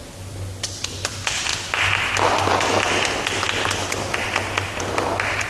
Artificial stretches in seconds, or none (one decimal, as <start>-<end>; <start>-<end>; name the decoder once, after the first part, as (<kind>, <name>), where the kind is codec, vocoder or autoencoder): none